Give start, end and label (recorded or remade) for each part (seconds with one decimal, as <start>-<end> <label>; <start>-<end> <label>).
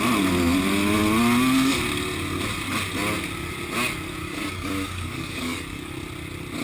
0.0-4.2 recorded; 4.2-5.9 remade; 5.9-6.6 recorded